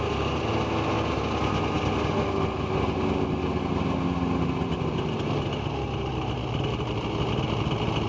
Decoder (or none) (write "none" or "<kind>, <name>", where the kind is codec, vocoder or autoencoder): none